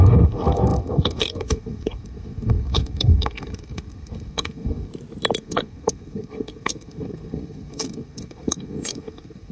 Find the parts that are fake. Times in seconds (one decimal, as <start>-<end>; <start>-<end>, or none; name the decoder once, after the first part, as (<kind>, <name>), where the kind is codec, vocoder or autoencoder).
0.0-4.9 (codec, SNAC); 5.4-9.5